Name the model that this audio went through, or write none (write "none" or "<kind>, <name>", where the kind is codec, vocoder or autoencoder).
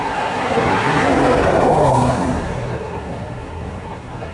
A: codec, SNAC